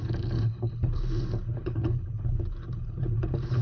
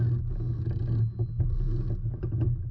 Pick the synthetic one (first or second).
first